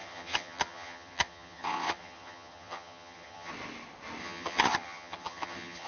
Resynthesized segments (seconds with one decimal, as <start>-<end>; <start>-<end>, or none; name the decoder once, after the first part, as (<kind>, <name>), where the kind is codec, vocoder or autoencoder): 0.0-3.5 (vocoder, HiFi-GAN); 4.2-5.9